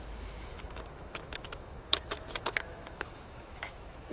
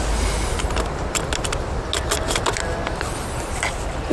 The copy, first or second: first